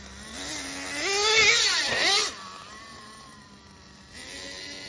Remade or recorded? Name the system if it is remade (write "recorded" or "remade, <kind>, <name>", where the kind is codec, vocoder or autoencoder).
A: recorded